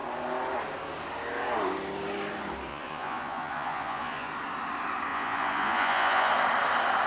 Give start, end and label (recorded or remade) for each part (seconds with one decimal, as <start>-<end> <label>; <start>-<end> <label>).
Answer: 0.0-2.7 recorded; 2.7-4.3 remade; 4.3-5.1 recorded; 5.1-6.3 remade; 6.3-7.1 recorded